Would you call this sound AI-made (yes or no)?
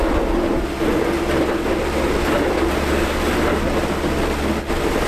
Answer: no